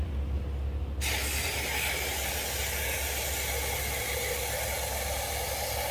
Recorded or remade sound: recorded